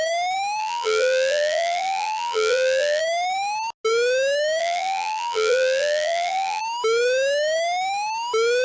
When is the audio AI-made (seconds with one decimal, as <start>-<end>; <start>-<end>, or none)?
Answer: 0.6-3.0; 4.6-6.6